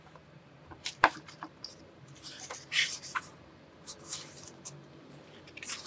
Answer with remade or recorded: remade